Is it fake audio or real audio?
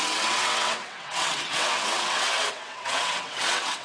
fake